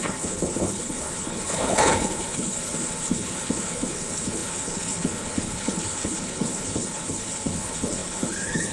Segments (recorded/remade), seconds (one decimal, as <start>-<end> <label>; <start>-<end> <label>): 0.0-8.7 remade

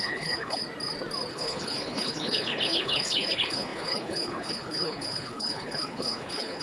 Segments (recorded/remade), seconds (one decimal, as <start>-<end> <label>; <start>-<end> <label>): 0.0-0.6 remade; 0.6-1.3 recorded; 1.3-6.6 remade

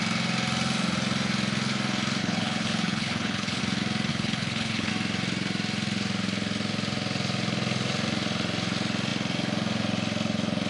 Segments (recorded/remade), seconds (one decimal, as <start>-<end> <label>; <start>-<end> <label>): 0.0-2.2 recorded; 2.2-3.6 remade; 3.6-4.1 recorded; 4.1-4.9 remade; 4.9-10.7 recorded